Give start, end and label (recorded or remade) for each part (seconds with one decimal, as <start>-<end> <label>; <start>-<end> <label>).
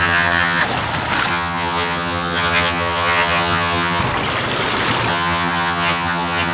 0.0-0.6 remade; 0.6-1.3 recorded; 1.3-4.0 remade; 4.0-5.1 recorded; 5.1-6.5 remade